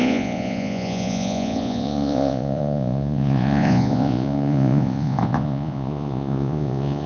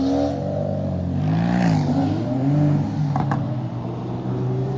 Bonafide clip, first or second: second